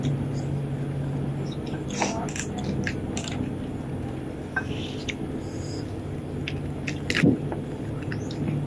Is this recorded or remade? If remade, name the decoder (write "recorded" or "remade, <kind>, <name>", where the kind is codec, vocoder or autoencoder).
recorded